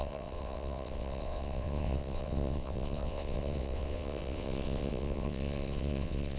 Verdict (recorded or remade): remade